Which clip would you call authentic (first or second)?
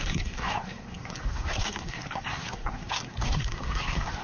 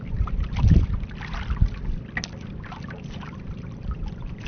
second